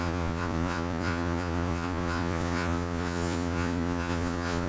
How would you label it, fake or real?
fake